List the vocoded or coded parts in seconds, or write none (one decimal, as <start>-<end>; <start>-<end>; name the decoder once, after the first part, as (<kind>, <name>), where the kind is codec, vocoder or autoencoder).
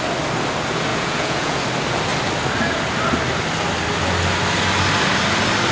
0.9-1.6 (vocoder, Vocos)